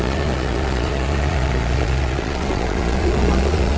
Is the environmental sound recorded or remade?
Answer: remade